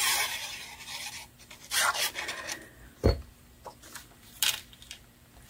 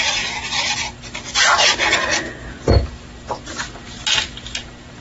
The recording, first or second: second